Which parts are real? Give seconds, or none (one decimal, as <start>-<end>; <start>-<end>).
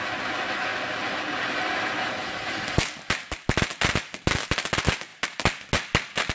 0.0-6.3